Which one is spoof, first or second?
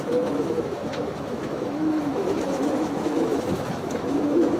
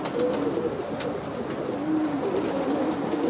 first